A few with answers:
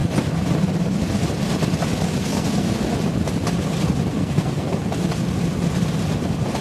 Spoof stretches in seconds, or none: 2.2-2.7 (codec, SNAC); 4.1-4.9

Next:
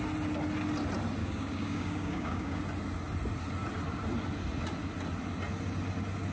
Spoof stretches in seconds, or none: 1.2-2.6 (codec, DAC)

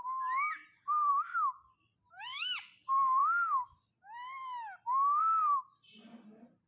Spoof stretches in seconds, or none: 0.5-1.1 (vocoder, BigVGAN v2); 2.1-3.2; 5.2-6.7

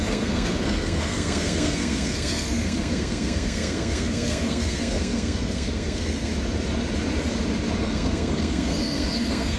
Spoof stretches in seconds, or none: 0.0-6.3 (codec, SNAC); 7.8-9.6

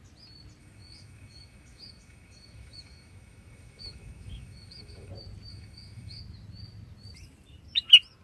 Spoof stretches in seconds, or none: 0.6-5.1 (autoencoder, DAC-VAE); 5.5-6.2

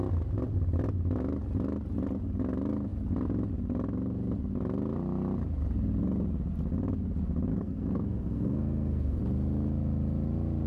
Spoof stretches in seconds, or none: 7.5-9.2 (codec, SNAC)

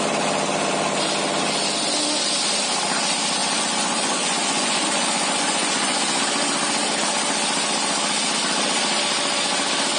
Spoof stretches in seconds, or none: 3.4-6.2 (vocoder, Vocos)